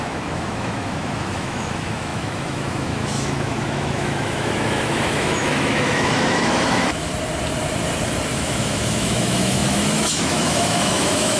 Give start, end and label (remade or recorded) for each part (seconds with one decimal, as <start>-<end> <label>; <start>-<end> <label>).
0.0-7.1 remade; 7.1-8.3 recorded; 8.3-11.4 remade